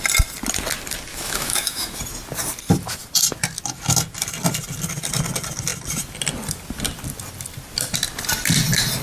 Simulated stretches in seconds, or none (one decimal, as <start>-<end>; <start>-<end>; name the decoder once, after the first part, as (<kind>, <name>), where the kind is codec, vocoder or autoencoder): 1.1-2.0 (autoencoder, DAC-VAE)